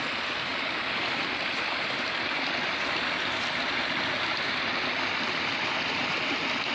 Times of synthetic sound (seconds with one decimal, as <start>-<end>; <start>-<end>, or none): none